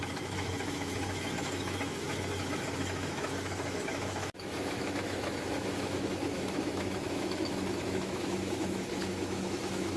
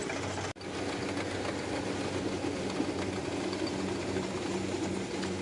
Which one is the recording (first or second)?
second